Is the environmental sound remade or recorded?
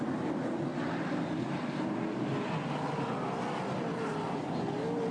recorded